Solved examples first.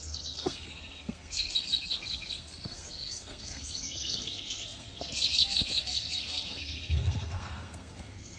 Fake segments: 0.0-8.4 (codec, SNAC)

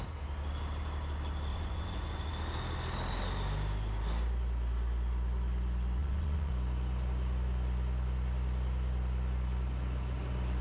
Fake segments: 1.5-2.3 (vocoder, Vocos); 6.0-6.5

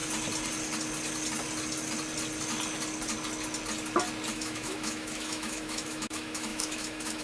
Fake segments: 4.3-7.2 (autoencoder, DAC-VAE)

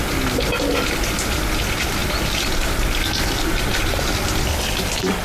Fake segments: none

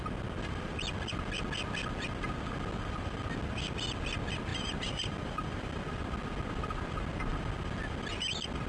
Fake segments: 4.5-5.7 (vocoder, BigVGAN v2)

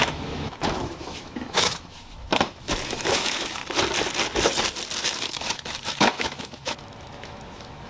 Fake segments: 0.0-3.6 (autoencoder, DAC-VAE); 5.0-7.9